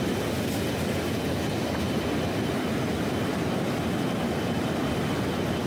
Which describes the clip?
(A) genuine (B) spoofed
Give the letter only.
A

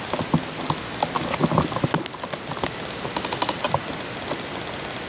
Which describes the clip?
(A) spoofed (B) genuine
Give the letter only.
B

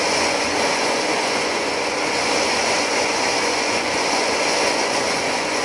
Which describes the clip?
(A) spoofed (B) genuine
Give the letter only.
A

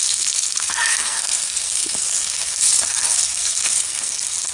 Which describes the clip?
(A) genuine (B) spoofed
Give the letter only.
B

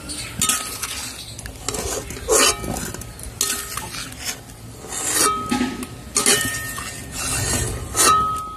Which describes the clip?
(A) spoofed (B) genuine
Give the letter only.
B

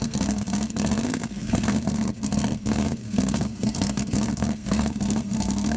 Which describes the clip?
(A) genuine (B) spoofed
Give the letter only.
B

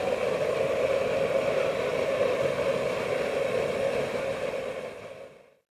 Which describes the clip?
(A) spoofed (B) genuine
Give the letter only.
B